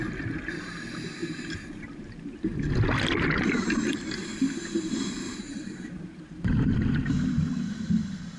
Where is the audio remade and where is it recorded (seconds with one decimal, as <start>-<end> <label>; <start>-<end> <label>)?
0.0-1.2 recorded; 1.2-2.5 remade; 2.5-4.2 recorded; 4.2-7.1 remade; 7.1-8.4 recorded